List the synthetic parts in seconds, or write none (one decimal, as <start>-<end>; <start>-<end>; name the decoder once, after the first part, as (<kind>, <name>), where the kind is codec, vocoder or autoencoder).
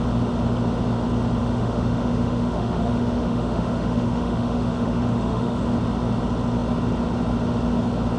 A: 1.4-5.6 (autoencoder, DAC-VAE)